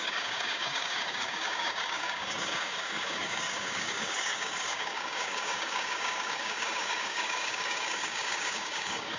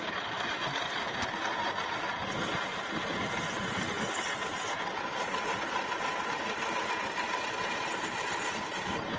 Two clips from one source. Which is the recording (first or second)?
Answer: second